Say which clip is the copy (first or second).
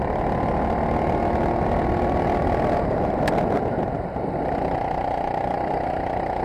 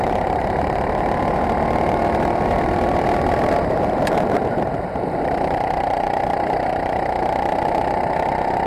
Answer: second